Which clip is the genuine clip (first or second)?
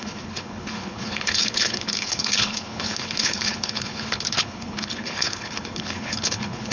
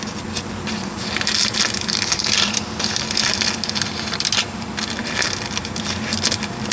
second